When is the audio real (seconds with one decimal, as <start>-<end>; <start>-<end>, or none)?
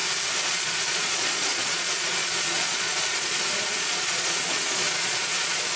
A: 0.0-0.5